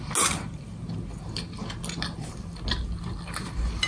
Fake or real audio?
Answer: real